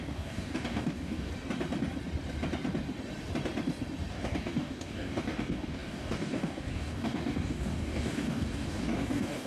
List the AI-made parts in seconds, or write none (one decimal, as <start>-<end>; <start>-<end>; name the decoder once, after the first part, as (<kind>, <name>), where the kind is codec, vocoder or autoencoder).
0.0-1.3 (codec, DAC); 4.1-9.5